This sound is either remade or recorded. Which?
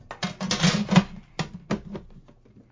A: recorded